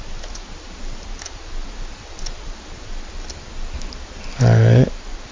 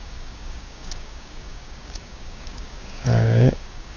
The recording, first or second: first